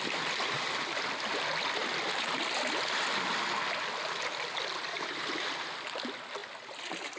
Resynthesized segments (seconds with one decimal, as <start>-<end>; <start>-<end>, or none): none